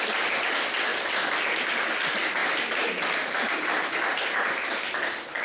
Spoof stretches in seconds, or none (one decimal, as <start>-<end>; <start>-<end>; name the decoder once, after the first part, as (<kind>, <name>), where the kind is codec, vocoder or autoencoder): 0.9-1.7 (vocoder, BigVGAN v2); 2.4-5.4